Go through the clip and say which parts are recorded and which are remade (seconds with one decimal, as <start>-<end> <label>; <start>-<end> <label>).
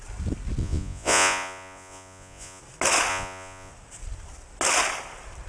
0.0-0.6 recorded; 0.6-2.6 remade; 2.6-3.1 recorded; 3.1-3.7 remade; 3.7-5.5 recorded